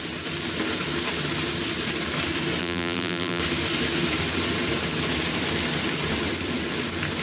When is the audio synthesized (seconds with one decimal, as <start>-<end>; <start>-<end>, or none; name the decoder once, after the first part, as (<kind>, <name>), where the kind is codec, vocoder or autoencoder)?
2.6-3.4 (vocoder, BigVGAN v2)